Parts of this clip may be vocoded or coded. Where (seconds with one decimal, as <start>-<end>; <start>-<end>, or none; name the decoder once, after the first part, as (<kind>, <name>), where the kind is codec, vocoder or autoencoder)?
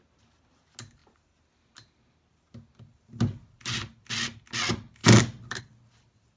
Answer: none